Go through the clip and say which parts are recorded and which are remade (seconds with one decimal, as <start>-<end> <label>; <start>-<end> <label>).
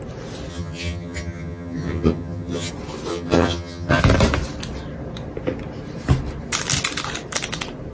0.0-0.5 recorded; 0.5-2.7 remade; 2.7-3.1 recorded; 3.1-4.0 remade; 4.0-7.9 recorded